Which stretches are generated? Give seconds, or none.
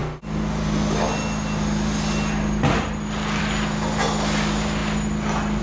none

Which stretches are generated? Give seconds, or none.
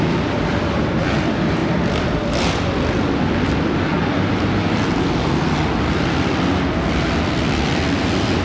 0.0-3.9 (vocoder, BigVGAN v2); 6.9-8.4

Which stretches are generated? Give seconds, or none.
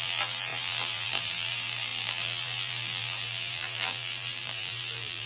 0.0-5.3 (vocoder, BigVGAN v2)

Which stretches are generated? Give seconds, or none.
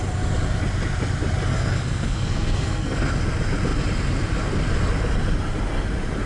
1.5-3.0 (codec, SNAC)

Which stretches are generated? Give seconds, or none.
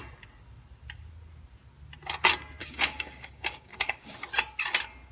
2.6-4.1 (codec, DAC)